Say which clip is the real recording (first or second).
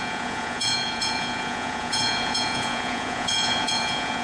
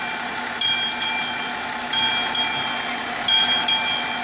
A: second